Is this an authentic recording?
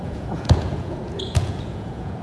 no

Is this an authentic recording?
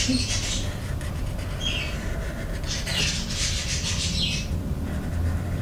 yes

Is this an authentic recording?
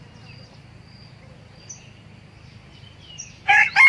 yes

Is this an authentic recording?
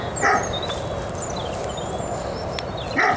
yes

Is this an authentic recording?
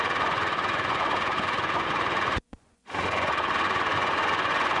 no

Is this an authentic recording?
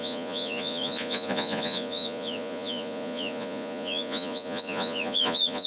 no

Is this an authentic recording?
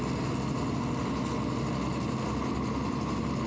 yes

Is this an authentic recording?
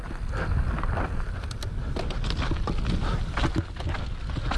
yes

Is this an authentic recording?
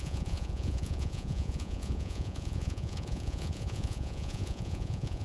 no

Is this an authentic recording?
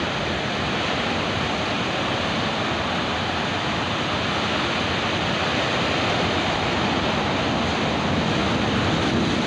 yes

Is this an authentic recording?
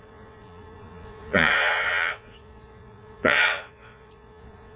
no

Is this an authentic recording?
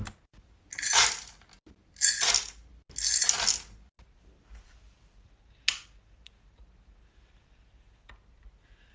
yes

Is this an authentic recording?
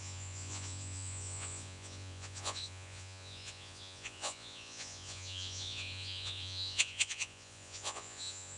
no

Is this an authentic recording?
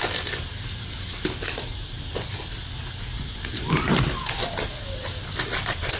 yes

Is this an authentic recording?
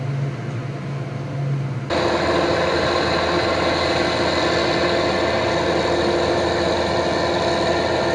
yes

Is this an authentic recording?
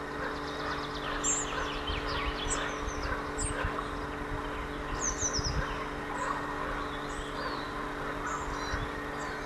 yes